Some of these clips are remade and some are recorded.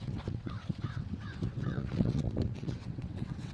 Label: remade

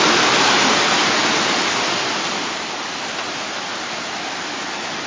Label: recorded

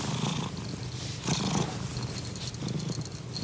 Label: recorded